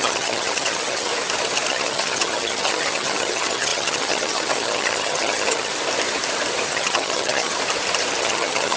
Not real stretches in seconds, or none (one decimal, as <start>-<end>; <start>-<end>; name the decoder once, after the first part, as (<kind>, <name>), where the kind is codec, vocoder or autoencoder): 0.0-1.1 (vocoder, HiFi-GAN); 1.7-5.7; 6.7-7.5; 8.2-8.8